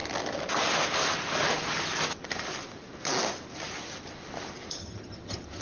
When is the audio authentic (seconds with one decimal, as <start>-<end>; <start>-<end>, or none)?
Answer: 0.0-4.8